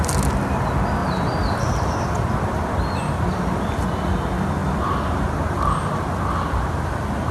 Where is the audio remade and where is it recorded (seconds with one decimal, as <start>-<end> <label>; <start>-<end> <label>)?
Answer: 0.0-1.0 recorded; 1.0-3.9 remade; 3.9-7.3 recorded